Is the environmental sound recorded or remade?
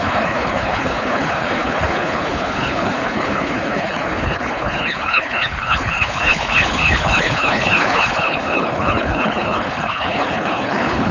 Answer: remade